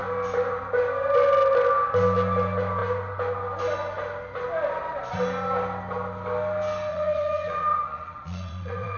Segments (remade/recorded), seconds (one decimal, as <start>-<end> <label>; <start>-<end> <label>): 0.0-6.9 recorded; 6.9-9.0 remade